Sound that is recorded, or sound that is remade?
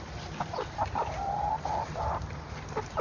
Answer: recorded